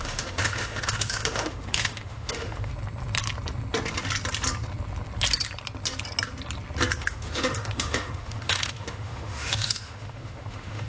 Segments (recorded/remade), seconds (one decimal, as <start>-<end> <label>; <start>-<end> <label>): 0.0-2.7 remade; 2.7-7.0 recorded; 7.0-10.9 remade